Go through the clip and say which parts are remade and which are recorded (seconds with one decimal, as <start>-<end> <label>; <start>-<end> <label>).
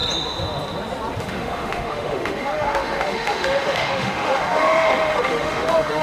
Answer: 0.0-1.2 recorded; 1.2-6.0 remade